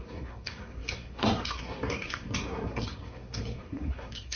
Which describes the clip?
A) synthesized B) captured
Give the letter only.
A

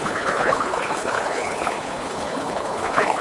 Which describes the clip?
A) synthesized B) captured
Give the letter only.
A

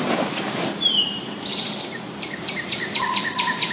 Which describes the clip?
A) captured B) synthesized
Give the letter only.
B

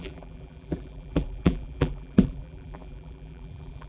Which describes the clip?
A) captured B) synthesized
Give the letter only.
B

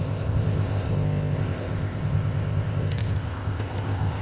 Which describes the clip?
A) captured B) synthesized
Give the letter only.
B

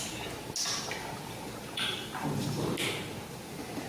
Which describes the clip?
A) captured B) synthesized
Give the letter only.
A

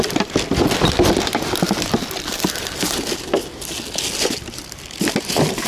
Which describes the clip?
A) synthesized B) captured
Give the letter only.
B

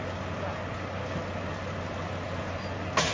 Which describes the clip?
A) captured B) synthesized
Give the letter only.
A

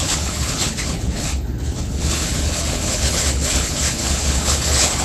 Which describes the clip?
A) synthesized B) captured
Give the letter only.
A